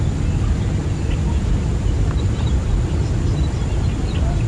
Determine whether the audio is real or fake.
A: real